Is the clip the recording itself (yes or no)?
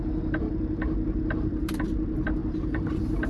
yes